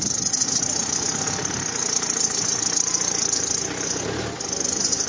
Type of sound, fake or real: real